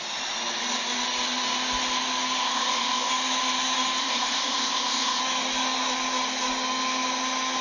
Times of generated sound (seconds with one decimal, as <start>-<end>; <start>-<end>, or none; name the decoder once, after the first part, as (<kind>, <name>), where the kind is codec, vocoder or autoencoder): 2.4-3.1 (codec, ZipCodec); 4.0-5.2